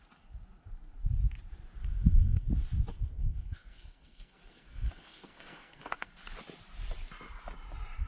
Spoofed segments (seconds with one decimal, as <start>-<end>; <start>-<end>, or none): 1.9-2.5; 2.9-6.1